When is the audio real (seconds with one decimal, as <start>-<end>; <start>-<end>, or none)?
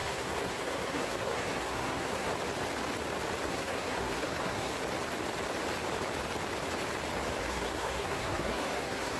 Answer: 2.3-3.4; 4.7-7.4